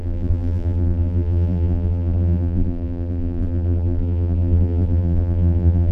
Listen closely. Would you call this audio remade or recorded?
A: remade